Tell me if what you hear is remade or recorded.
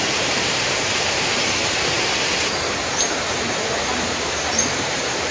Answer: remade